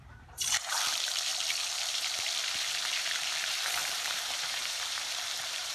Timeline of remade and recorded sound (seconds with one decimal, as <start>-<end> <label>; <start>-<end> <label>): 0.0-1.3 remade; 1.3-3.0 recorded; 3.0-5.7 remade